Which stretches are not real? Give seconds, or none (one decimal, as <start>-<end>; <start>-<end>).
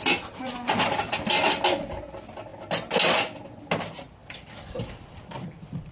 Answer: 4.2-5.9